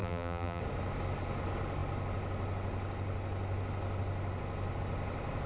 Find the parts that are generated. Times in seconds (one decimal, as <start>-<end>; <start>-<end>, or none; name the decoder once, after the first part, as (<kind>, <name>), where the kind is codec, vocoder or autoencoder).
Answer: 0.0-0.6 (vocoder, BigVGAN v2)